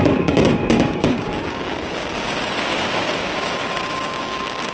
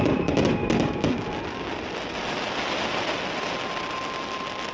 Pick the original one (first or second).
second